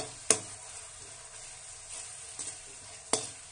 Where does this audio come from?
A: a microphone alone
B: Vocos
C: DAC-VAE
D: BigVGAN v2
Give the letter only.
A